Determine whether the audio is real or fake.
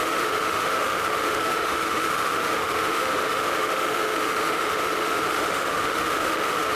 fake